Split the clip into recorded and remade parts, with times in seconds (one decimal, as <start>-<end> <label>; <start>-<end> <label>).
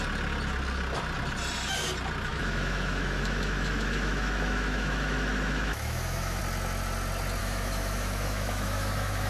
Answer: 0.0-2.3 recorded; 2.3-6.4 remade; 6.4-7.4 recorded; 7.4-9.3 remade